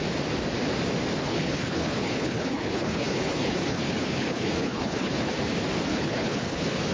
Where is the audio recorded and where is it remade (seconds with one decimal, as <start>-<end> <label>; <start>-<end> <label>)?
0.0-1.2 recorded; 1.2-5.3 remade; 5.3-5.9 recorded; 5.9-6.9 remade